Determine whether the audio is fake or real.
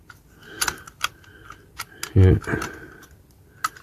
real